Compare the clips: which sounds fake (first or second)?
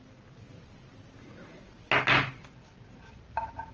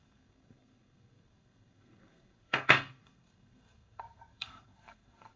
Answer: second